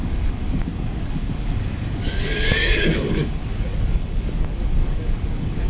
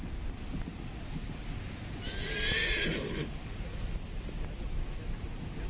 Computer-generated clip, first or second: first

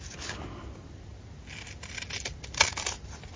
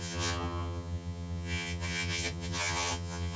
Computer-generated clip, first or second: second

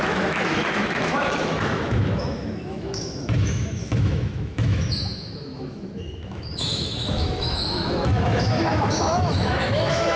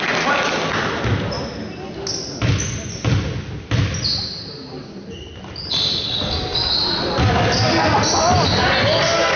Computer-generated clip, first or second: first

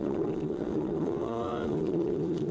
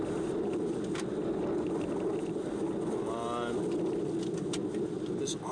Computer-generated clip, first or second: first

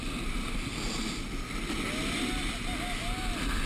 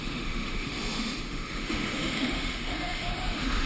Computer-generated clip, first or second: second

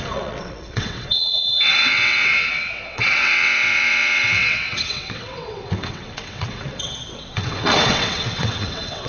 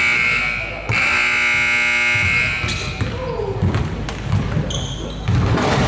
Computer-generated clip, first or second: first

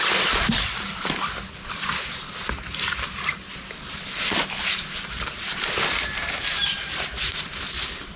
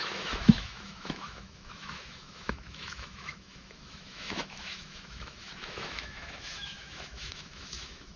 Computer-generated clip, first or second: second